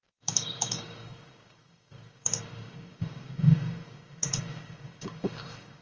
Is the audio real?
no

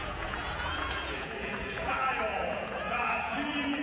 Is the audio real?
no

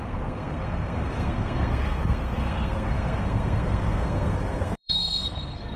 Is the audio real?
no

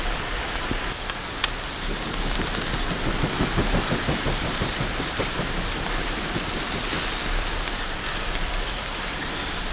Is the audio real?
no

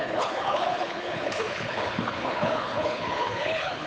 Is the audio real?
no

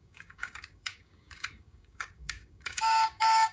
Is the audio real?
no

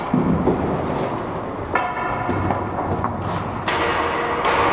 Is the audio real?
yes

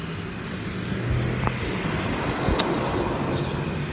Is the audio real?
yes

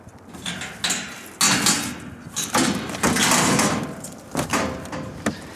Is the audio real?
yes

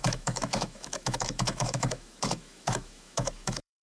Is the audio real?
no